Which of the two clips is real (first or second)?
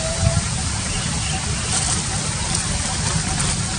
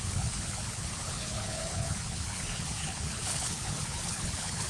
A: first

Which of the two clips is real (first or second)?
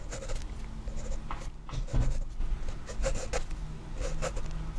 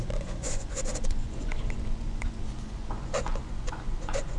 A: first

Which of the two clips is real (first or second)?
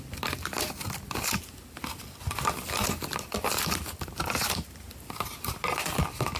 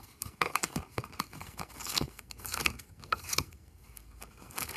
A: first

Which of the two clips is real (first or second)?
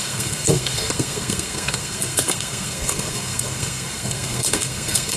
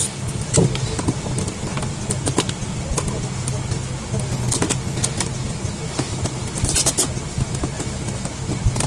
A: second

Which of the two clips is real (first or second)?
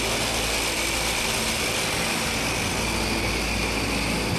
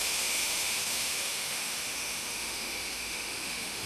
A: first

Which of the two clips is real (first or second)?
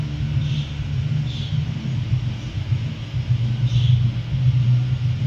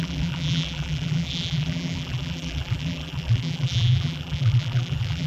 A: first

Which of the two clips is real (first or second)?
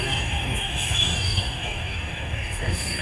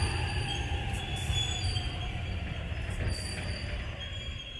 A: second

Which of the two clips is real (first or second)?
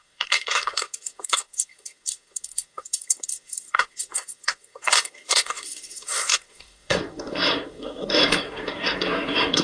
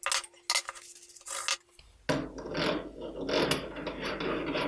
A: second